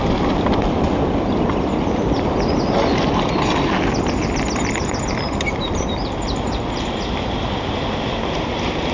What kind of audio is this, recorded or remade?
recorded